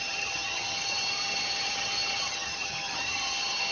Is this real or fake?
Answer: fake